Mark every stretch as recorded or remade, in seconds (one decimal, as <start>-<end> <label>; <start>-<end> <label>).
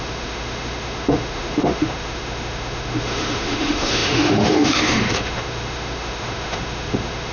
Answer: 0.0-7.3 remade